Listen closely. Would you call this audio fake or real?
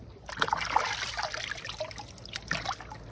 real